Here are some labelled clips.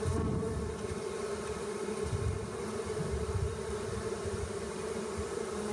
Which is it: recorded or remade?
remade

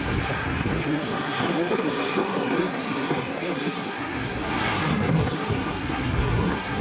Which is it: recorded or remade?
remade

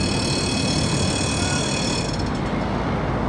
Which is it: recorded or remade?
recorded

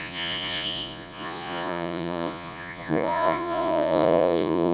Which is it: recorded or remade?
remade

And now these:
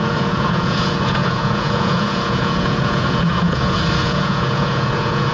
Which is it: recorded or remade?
remade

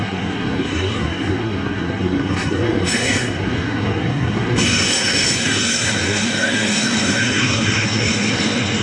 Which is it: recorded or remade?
remade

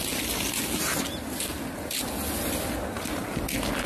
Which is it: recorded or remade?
recorded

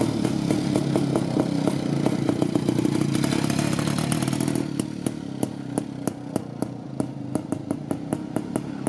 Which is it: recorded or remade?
recorded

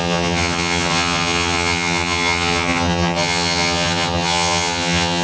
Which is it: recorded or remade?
remade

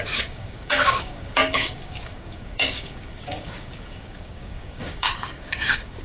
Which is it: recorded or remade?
remade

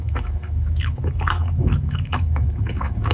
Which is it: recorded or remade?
remade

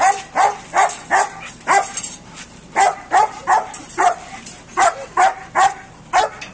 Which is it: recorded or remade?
recorded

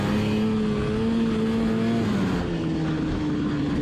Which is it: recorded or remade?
recorded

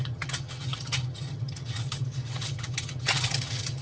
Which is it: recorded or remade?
remade